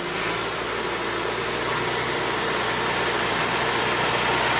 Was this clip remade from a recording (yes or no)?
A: no